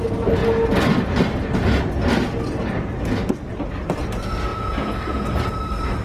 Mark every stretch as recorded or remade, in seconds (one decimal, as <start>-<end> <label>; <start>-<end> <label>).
0.0-4.5 recorded; 4.5-5.5 remade; 5.5-6.0 recorded